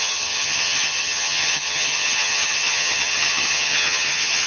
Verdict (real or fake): fake